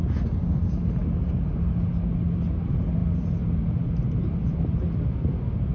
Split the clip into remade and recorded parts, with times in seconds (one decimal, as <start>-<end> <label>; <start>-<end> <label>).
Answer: 0.0-5.7 recorded